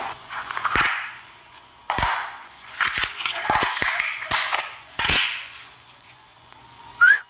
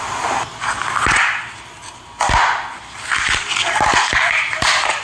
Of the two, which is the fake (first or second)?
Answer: first